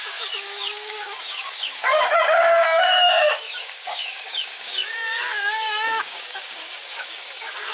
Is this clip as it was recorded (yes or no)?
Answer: no